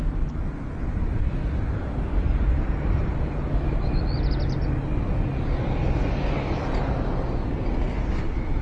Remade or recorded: recorded